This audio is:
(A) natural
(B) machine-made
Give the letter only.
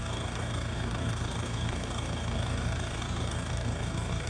B